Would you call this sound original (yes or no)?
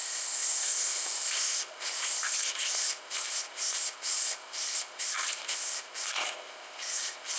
no